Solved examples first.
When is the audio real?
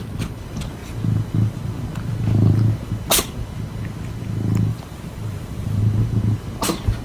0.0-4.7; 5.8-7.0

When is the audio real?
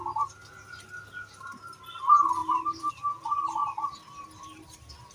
0.0-5.1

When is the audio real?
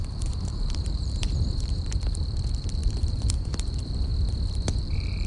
4.1-4.7